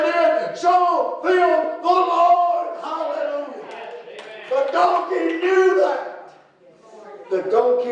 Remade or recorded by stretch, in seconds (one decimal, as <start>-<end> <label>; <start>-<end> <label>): 0.0-1.5 recorded; 1.5-3.2 remade; 3.2-4.8 recorded; 4.8-7.9 remade